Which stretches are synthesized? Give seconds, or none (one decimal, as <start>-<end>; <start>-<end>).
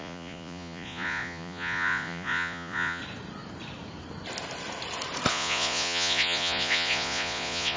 0.0-3.0; 5.3-7.8